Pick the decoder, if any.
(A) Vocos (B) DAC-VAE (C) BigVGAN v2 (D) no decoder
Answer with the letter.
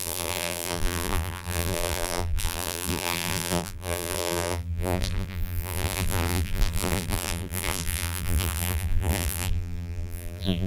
C